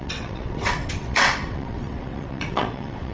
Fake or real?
fake